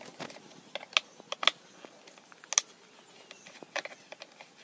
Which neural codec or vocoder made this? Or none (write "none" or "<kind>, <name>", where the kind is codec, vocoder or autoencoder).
none